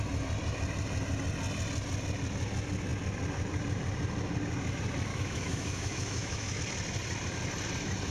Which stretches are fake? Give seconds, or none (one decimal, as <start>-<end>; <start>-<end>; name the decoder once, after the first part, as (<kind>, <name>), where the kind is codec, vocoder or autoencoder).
5.1-6.6 (autoencoder, DAC-VAE)